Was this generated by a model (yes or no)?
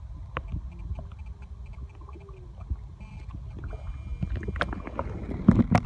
no